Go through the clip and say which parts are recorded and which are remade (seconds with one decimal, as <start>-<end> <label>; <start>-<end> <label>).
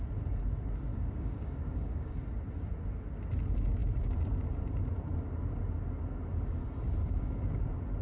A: 0.0-0.9 recorded; 0.9-2.2 remade; 2.2-7.0 recorded; 7.0-7.6 remade; 7.6-8.0 recorded